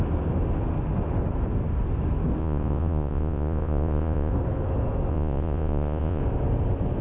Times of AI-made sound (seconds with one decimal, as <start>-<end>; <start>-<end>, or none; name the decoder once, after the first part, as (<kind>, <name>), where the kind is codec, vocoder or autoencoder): 2.4-4.3 (vocoder, Vocos); 5.1-6.2